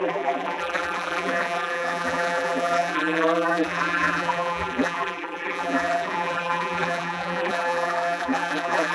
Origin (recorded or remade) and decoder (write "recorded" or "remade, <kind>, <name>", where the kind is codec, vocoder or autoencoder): remade, vocoder, BigVGAN v2